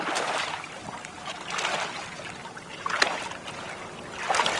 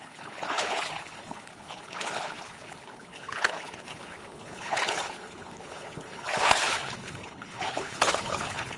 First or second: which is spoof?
second